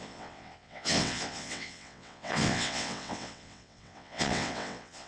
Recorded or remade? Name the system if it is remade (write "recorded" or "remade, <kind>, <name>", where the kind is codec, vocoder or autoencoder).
remade, vocoder, WaveNeXt